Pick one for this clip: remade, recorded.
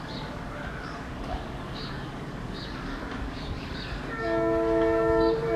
remade